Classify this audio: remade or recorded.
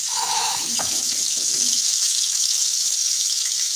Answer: remade